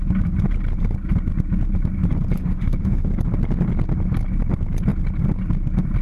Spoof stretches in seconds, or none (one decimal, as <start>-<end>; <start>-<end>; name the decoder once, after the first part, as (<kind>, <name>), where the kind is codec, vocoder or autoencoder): 2.4-3.1 (autoencoder, DAC-VAE)